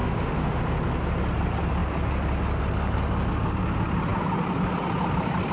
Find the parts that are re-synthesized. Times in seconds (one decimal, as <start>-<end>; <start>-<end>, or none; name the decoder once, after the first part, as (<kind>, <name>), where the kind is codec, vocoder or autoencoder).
0.0-0.6 (autoencoder, DAC-VAE)